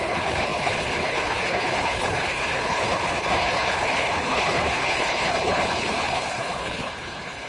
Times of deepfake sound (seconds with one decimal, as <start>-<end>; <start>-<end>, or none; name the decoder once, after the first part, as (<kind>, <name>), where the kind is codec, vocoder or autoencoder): 0.0-7.5 (codec, HILCodec)